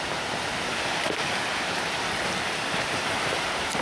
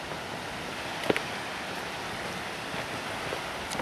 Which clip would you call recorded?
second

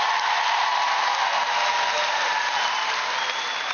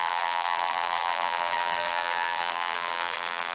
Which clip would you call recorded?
first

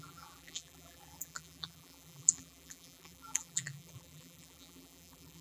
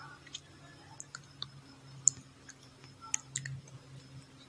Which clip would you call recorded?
second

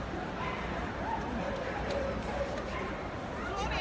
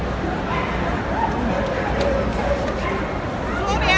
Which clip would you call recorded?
second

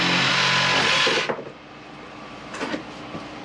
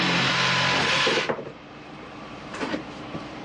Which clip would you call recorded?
first